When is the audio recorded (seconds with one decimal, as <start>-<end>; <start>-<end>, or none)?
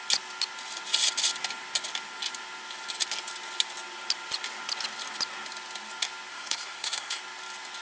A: 0.0-6.3; 7.2-7.8